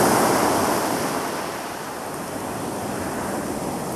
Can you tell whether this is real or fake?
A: real